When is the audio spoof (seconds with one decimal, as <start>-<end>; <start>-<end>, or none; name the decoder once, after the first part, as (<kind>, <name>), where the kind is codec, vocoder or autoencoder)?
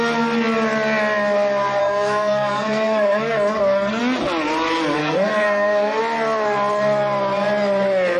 1.8-4.0 (codec, SNAC); 5.0-6.0